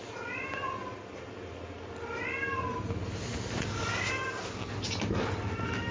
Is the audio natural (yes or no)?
yes